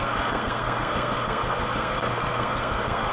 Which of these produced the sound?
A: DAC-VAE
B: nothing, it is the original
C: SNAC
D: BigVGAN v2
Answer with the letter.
C